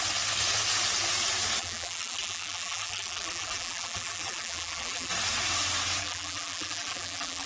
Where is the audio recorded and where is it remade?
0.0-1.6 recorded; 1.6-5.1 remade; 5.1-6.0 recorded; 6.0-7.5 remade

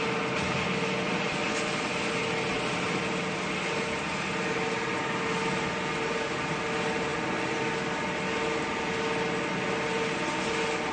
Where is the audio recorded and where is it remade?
0.0-10.9 recorded